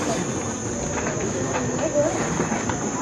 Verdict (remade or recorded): recorded